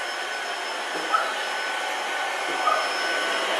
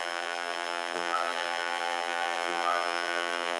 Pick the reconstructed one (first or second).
second